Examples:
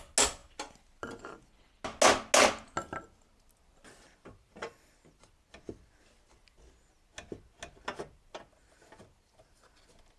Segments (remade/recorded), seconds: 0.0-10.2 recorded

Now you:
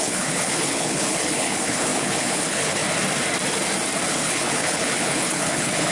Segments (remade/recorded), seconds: 0.0-2.8 remade; 2.8-4.1 recorded; 4.1-5.9 remade

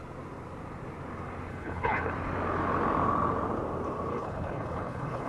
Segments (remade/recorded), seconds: 0.0-1.5 recorded; 1.5-2.1 remade; 2.1-4.1 recorded; 4.1-5.3 remade

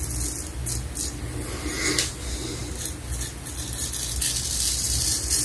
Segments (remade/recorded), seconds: 0.0-5.4 recorded

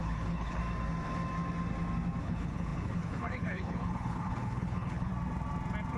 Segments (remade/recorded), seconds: 0.0-0.6 remade; 0.6-2.2 recorded; 2.2-5.1 remade; 5.1-6.0 recorded